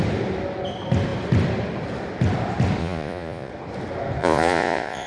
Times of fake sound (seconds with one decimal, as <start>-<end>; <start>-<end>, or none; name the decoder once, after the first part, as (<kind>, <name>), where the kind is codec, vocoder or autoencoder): 2.8-3.5 (vocoder, Vocos); 4.2-5.1